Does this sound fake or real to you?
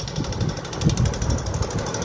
real